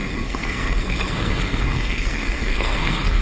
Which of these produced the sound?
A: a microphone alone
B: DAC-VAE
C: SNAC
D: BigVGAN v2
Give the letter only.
C